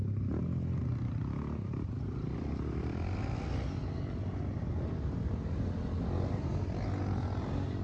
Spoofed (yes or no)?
no